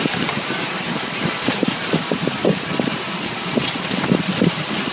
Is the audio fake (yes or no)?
yes